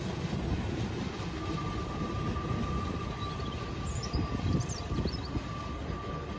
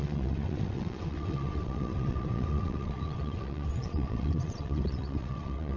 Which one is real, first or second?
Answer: first